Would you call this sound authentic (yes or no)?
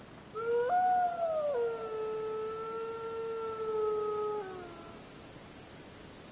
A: yes